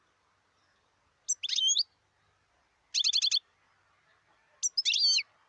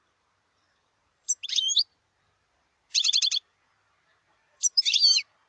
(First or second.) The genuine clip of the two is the first